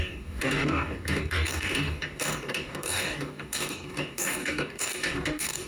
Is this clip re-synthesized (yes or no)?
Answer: yes